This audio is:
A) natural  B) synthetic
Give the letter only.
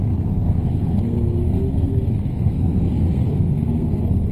B